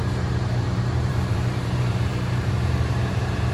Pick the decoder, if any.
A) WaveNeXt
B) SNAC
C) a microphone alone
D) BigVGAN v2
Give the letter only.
D